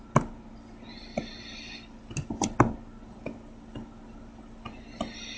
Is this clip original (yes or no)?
yes